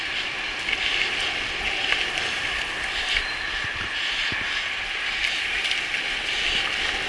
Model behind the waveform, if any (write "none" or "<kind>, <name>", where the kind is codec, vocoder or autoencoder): none